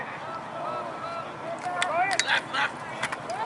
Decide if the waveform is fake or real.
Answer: real